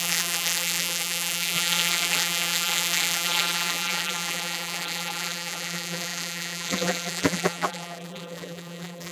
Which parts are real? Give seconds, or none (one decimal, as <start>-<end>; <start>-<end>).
none